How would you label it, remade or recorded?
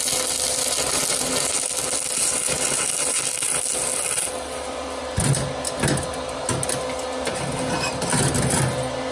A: recorded